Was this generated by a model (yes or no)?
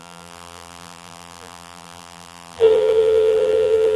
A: yes